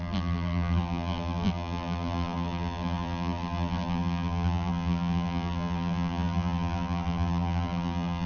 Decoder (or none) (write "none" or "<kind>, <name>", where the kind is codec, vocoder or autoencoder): vocoder, BigVGAN v2